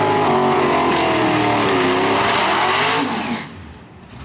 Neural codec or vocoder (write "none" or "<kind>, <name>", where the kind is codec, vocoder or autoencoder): none